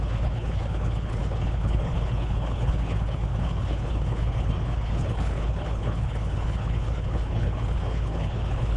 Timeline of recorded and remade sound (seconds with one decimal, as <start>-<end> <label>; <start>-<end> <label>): 0.0-8.8 remade